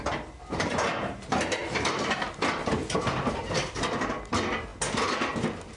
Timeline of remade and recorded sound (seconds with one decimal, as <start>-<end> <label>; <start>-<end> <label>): 0.0-5.8 recorded